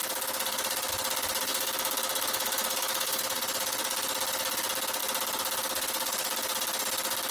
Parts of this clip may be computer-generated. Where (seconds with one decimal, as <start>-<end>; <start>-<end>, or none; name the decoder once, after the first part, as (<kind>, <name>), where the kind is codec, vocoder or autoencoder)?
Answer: 1.5-3.2 (autoencoder, DAC-VAE)